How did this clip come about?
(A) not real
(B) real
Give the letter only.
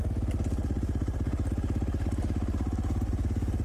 B